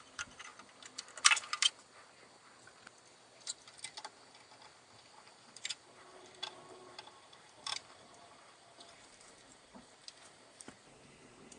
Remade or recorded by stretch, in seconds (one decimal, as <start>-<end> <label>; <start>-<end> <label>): 0.0-0.5 remade; 0.5-5.0 recorded; 5.0-11.6 remade